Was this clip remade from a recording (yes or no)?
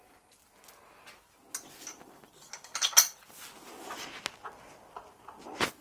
no